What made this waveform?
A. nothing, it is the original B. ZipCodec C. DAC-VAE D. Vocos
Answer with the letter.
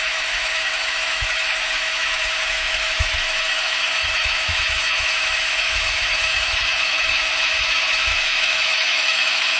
C